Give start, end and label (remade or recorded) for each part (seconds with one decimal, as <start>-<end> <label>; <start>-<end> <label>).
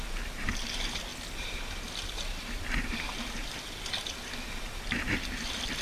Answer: 0.0-5.8 recorded